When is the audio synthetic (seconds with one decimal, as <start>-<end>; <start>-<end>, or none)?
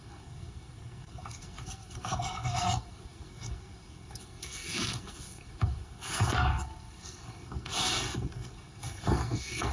0.0-9.7